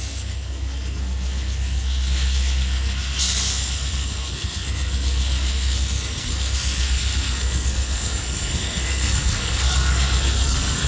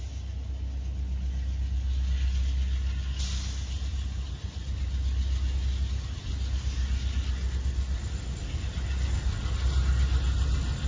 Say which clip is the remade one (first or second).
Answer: first